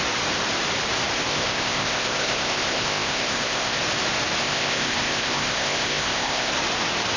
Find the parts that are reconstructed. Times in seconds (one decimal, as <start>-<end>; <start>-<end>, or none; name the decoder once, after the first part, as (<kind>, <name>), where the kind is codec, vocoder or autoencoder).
1.3-3.8 (codec, ZipCodec); 4.4-6.5